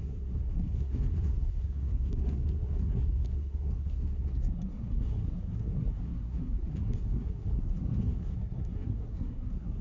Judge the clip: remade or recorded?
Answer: remade